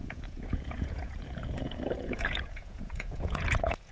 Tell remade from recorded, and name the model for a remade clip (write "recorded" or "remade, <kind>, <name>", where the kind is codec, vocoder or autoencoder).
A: remade, vocoder, Vocos